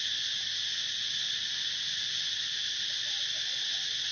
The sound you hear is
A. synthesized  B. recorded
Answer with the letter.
B